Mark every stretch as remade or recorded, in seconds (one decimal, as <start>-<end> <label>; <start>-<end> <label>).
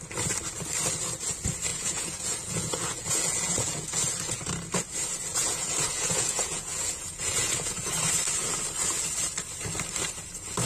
0.0-1.7 recorded; 1.7-4.0 remade; 4.0-5.3 recorded; 5.3-7.9 remade; 7.9-10.7 recorded